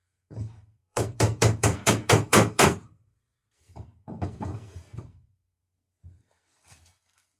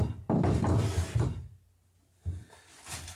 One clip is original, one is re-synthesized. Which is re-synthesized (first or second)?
first